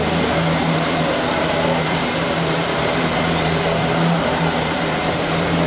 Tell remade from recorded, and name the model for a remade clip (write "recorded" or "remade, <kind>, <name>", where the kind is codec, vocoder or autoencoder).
remade, vocoder, BigVGAN v2